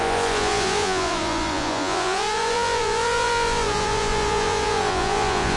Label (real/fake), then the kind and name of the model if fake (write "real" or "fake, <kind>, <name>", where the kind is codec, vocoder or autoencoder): fake, vocoder, Vocos